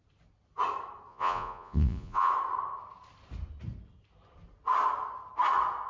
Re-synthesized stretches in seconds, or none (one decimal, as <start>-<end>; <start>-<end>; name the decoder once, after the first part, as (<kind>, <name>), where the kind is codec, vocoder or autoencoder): 1.1-2.3 (vocoder, Vocos)